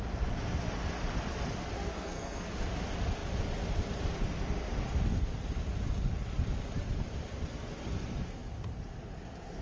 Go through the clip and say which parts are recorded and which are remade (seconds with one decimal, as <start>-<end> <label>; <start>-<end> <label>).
0.0-1.6 recorded; 1.6-2.5 remade; 2.5-9.6 recorded